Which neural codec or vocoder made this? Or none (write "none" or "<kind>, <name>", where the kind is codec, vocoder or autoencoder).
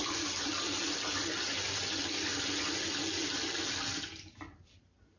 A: none